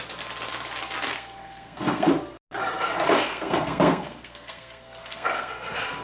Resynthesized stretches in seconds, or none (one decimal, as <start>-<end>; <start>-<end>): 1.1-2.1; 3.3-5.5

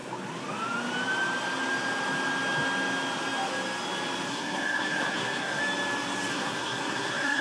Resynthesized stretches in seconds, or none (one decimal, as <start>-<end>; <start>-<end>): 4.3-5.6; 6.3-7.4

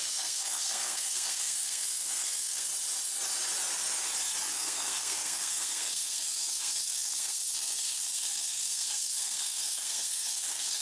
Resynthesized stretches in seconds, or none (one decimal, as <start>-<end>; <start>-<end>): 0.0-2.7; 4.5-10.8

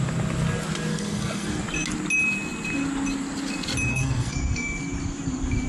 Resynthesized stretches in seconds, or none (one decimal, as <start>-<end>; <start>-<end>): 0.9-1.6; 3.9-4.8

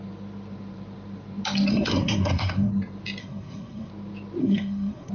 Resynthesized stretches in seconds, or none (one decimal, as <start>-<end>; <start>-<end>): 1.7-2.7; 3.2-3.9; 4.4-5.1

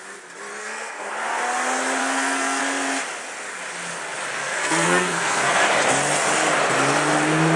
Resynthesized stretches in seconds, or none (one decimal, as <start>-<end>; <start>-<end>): 0.6-1.1; 2.0-2.6; 4.4-5.7